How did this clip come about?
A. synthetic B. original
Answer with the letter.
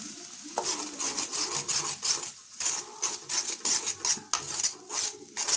B